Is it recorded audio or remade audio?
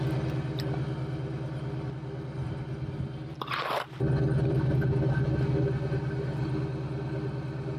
recorded